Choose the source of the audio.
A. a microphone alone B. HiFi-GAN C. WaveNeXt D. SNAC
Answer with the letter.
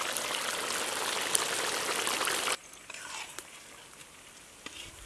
A